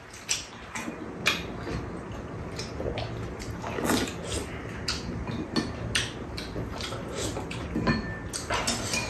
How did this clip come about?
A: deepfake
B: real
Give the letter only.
B